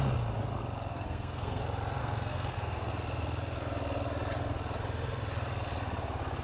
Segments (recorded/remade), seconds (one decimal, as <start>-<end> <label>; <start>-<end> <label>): 0.0-0.9 recorded; 0.9-1.6 remade; 1.6-2.0 recorded; 2.0-2.9 remade; 2.9-6.4 recorded